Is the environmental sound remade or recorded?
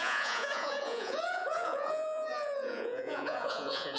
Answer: remade